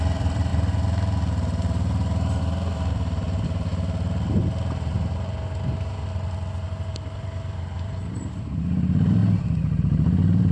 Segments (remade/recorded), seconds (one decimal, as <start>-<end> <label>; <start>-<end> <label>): 0.0-0.5 remade; 0.5-2.4 recorded; 2.4-3.7 remade; 3.7-6.5 recorded; 6.5-9.2 remade; 9.2-9.8 recorded; 9.8-10.5 remade